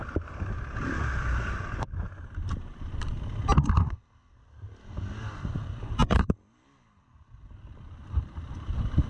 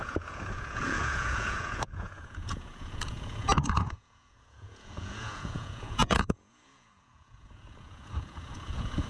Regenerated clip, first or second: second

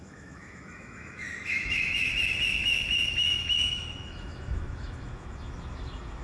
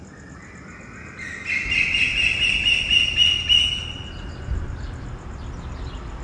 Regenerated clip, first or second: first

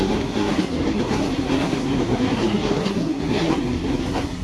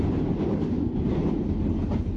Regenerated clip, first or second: first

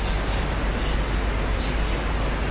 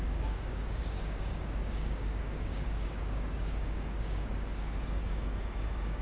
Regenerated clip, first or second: second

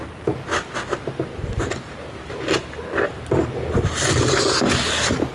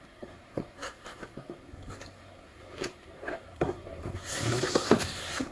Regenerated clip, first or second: second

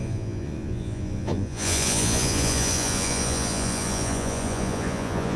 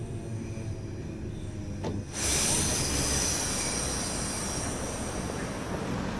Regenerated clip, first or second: first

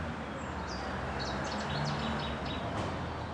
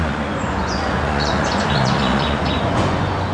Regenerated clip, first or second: second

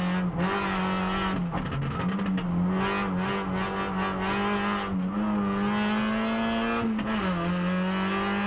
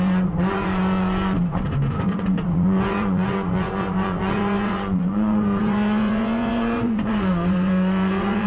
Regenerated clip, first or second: second